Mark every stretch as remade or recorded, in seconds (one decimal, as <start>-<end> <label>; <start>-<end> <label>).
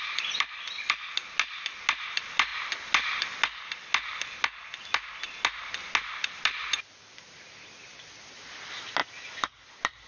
0.0-10.1 recorded